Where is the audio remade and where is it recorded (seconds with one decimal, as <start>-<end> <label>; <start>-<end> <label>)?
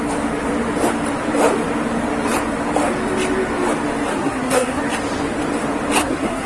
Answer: 0.0-4.1 recorded; 4.1-4.8 remade; 4.8-6.0 recorded; 6.0-6.5 remade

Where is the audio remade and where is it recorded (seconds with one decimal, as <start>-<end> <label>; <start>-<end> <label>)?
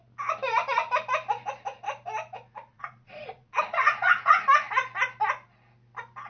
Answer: 0.0-2.7 recorded; 2.7-4.4 remade; 4.4-6.3 recorded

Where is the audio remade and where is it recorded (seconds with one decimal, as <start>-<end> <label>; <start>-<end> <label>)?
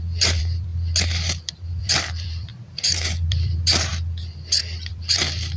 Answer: 0.0-0.7 remade; 0.7-1.8 recorded; 1.8-2.5 remade; 2.5-3.0 recorded; 3.0-3.9 remade; 3.9-4.6 recorded; 4.6-5.6 remade